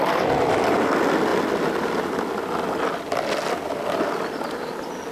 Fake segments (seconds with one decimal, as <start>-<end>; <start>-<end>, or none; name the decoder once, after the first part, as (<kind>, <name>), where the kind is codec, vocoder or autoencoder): none